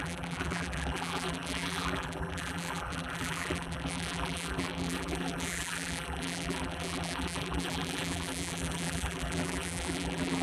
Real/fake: fake